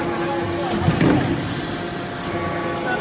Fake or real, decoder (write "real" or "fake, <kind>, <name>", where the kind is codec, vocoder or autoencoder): real